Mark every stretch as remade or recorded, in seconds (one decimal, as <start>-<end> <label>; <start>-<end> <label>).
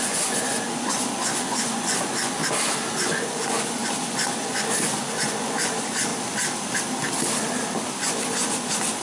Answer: 0.0-2.4 remade; 2.4-2.9 recorded; 2.9-6.1 remade; 6.1-8.0 recorded; 8.0-9.0 remade